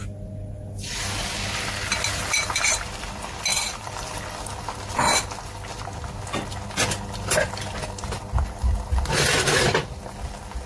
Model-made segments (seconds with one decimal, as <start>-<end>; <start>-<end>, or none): 3.5-4.2